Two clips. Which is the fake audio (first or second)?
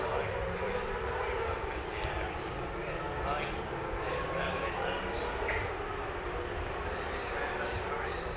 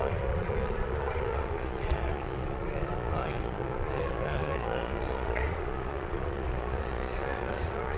second